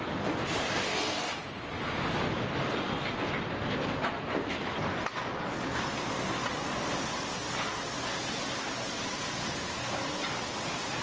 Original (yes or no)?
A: yes